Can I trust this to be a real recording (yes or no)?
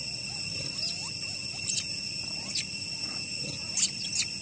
yes